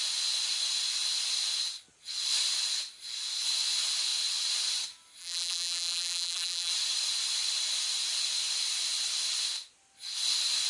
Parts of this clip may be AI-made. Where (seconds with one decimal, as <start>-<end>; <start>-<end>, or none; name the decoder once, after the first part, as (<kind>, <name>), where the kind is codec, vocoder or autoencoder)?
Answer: 5.2-6.7 (vocoder, BigVGAN v2)